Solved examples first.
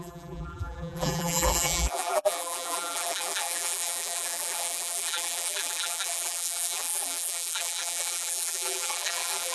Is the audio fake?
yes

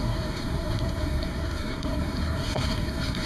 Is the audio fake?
yes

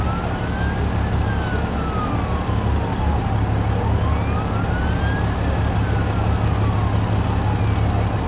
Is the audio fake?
no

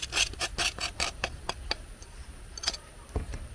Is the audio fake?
yes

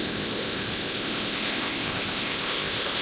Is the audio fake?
yes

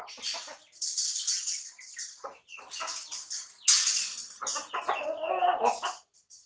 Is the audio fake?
no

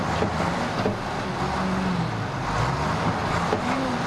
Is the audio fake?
no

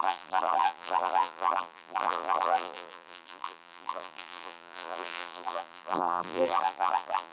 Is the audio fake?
yes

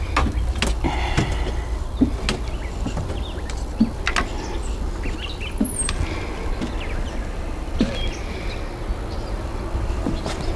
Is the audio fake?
no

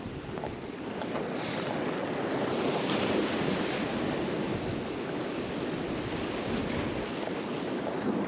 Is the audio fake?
no